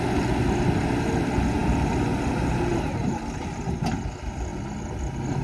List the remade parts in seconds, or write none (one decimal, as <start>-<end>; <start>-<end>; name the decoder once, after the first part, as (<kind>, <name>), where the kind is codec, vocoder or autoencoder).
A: none